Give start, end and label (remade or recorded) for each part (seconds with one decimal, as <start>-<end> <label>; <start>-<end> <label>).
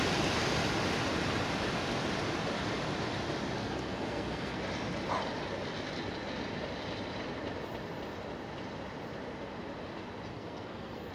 0.0-3.6 recorded; 3.6-4.6 remade; 4.6-10.3 recorded; 10.3-11.1 remade